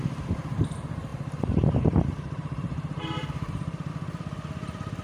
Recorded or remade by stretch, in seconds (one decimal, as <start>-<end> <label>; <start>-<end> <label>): 0.0-1.1 recorded; 1.1-3.9 remade; 3.9-5.0 recorded